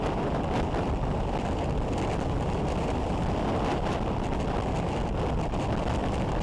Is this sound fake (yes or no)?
no